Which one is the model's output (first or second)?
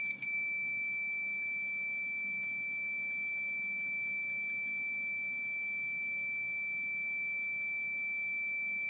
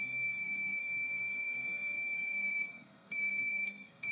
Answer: second